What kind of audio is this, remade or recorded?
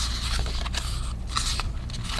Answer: recorded